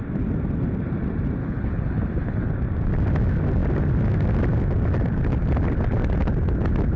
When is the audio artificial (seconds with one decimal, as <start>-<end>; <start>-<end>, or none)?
1.4-2.5

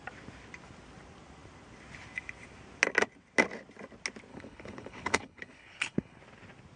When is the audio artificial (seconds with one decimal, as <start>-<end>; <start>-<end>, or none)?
4.3-6.2

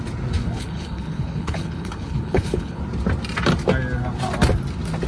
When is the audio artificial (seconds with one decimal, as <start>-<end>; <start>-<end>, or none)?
0.4-2.8

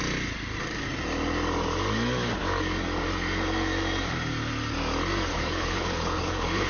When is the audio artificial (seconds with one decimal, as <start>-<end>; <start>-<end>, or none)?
5.3-6.7